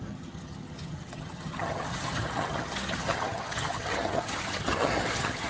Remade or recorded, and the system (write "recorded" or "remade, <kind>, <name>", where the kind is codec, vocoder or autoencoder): remade, vocoder, HiFi-GAN